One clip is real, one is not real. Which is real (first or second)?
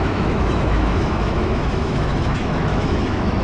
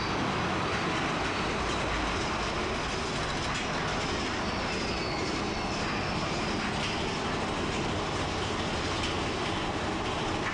second